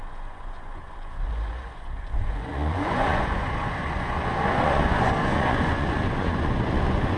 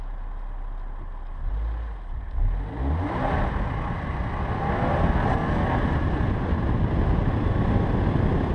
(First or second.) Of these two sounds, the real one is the second